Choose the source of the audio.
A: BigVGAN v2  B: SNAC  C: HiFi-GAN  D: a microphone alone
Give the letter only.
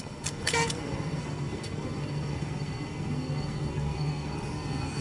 B